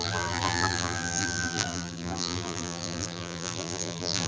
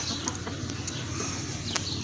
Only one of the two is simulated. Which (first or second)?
first